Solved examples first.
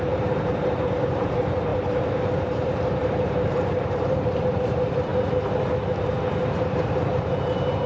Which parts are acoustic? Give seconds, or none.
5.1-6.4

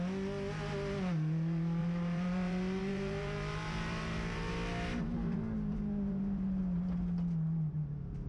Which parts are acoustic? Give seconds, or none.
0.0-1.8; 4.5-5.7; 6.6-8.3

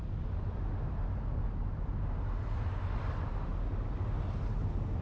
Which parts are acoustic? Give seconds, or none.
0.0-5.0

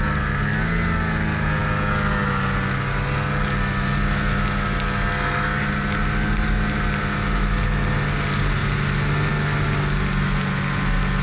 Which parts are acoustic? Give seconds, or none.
0.0-11.2

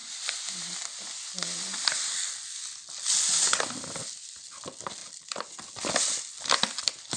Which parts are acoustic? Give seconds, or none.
0.0-7.2

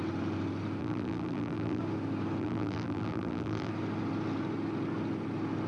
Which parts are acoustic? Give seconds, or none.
0.0-0.8; 1.8-2.4; 3.7-5.7

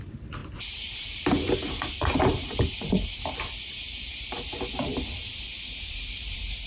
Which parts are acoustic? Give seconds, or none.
4.9-5.9